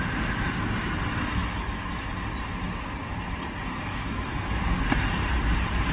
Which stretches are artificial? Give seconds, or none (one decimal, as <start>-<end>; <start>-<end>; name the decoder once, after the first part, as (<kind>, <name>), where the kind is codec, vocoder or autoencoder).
1.4-2.1 (autoencoder, DAC-VAE); 3.6-4.6